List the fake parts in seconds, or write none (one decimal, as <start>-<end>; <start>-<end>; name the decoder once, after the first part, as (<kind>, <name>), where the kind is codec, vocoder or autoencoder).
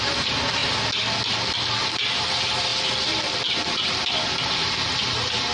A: none